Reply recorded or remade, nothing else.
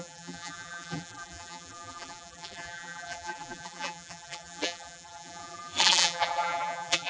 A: remade